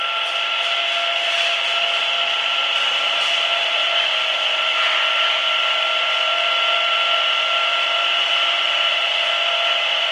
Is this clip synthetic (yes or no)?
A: yes